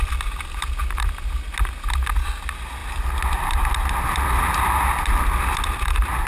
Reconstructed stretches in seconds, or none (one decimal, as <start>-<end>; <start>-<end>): none